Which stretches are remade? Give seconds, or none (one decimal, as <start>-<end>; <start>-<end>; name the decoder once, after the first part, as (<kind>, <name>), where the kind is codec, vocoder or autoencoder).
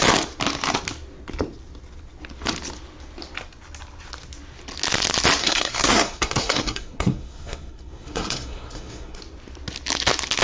5.4-9.2 (codec, SNAC)